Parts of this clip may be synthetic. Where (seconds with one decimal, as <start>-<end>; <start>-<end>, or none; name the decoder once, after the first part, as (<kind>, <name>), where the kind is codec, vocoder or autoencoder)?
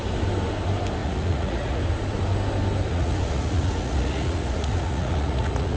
1.0-1.8 (vocoder, Vocos); 2.9-5.8